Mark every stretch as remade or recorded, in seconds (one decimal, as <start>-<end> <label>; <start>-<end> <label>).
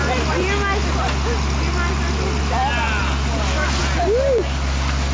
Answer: 0.0-5.1 recorded